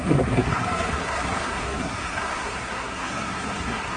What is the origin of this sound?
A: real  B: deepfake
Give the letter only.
B